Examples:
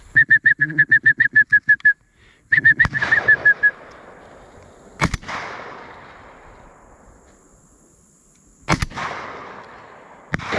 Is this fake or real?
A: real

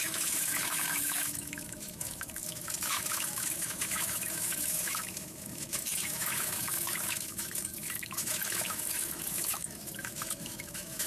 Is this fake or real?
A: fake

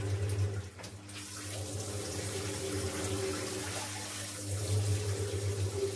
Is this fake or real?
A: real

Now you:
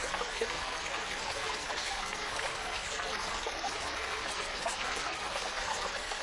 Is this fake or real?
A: fake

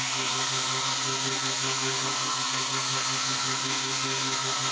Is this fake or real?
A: fake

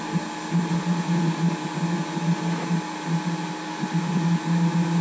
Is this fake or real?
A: real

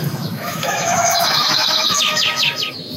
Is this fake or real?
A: fake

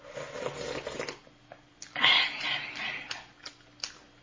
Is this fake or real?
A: real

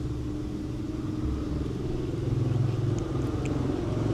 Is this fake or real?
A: real